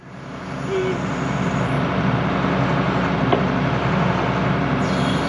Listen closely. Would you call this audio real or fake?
real